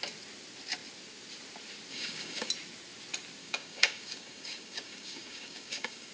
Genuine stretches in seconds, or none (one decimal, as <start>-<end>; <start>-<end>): 0.0-1.9; 2.5-3.4